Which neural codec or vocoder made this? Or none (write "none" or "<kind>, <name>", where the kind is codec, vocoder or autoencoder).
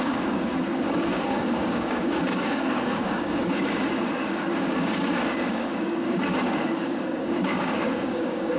codec, DAC